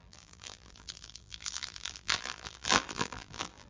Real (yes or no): no